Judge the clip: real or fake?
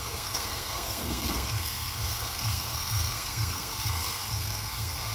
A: fake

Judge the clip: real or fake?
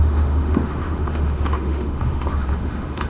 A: fake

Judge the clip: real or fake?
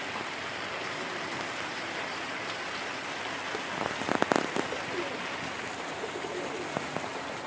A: real